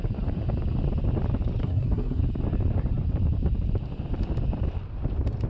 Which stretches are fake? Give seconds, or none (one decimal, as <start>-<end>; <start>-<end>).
1.6-2.2